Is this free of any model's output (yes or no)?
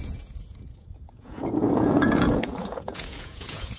no